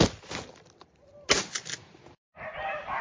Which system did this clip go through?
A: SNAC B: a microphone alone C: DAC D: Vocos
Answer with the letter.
B